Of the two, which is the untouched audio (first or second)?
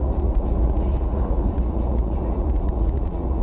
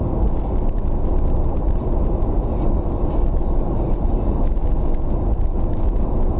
second